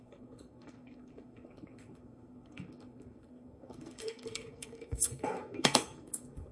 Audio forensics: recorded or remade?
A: remade